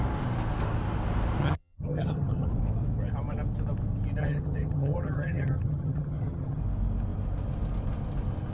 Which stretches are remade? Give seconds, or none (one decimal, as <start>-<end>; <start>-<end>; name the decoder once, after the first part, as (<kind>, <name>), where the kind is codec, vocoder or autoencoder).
1.4-2.5 (vocoder, HiFi-GAN); 4.2-6.6